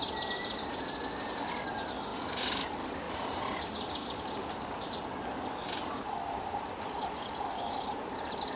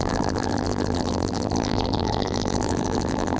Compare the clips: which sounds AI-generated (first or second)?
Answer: second